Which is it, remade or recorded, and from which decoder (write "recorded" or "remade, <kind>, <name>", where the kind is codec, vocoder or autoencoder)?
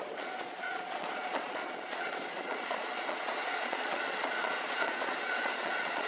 remade, vocoder, Vocos